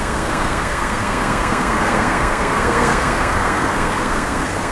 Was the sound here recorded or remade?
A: remade